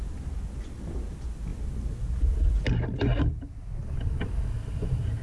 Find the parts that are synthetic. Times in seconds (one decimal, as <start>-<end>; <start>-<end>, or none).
none